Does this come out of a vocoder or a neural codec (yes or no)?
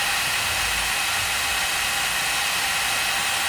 no